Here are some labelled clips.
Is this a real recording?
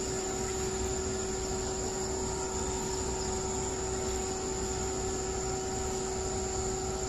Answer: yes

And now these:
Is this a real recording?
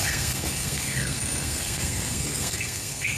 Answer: no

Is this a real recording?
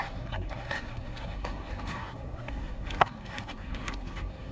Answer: no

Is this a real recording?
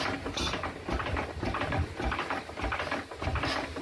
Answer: yes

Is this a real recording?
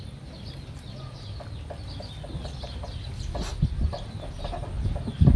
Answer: yes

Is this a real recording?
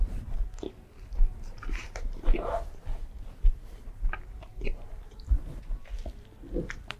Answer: yes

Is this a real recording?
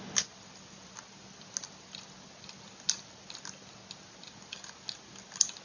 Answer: yes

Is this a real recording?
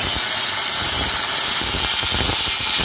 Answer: yes